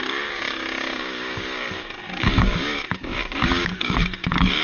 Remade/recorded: remade